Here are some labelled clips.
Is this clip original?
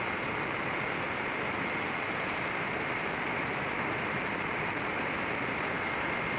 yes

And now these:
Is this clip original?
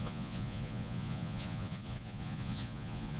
no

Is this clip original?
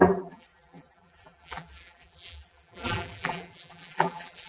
no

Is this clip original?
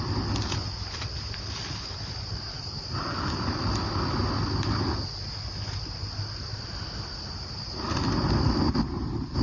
yes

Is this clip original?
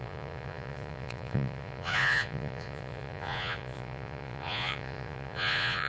no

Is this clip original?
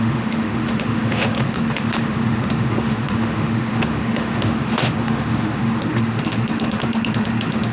no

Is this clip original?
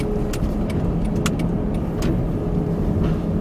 yes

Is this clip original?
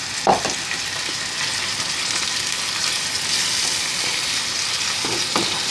yes